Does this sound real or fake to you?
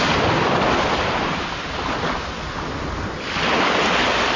real